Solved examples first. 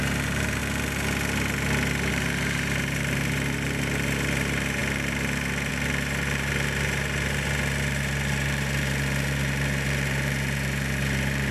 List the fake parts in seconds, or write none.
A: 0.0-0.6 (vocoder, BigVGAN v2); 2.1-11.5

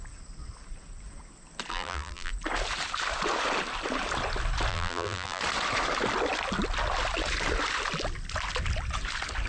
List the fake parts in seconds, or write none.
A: 1.7-2.3 (vocoder, BigVGAN v2); 4.7-5.4

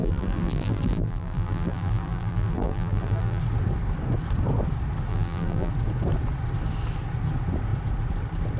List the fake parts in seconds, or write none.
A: 0.0-3.4 (vocoder, BigVGAN v2); 5.1-5.7

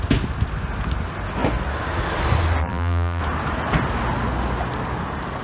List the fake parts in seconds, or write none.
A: 2.6-3.2 (vocoder, BigVGAN v2)

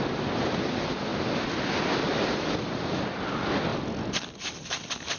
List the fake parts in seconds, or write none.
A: none

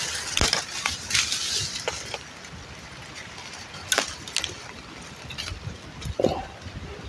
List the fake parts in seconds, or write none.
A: none

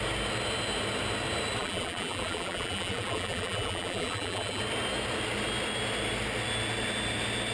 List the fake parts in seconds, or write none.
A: 1.6-4.6 (vocoder, BigVGAN v2)

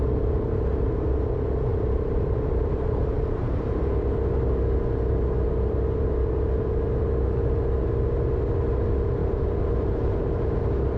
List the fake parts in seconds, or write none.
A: 1.7-3.8 (vocoder, BigVGAN v2); 9.2-10.6